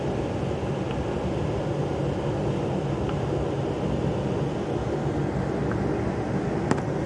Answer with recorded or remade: recorded